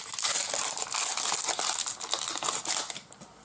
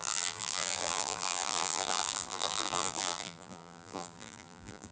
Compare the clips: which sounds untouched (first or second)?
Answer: first